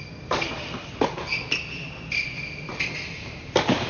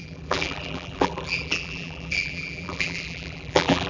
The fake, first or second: second